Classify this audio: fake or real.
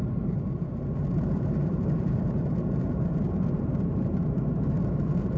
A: fake